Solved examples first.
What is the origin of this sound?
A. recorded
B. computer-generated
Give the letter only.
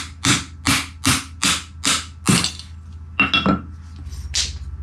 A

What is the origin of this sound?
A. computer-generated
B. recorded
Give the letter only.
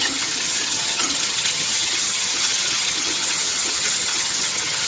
A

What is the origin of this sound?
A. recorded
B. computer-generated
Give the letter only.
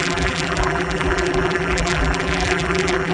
B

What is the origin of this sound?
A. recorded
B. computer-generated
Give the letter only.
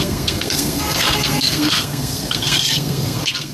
B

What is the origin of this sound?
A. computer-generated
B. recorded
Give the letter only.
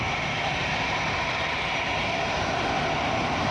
B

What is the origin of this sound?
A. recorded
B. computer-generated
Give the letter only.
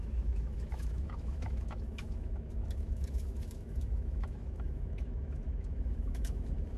B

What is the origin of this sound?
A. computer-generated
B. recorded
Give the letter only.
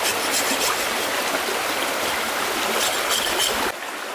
B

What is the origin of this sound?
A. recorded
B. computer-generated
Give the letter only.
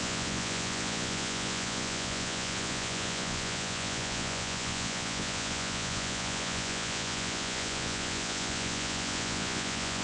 B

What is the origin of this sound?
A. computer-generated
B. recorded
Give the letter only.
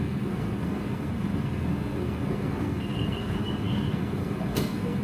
A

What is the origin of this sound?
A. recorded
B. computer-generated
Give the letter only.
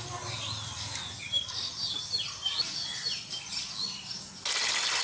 A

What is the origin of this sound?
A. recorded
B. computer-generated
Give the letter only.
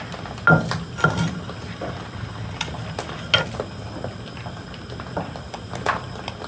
A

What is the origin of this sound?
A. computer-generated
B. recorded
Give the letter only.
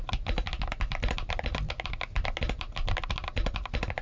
B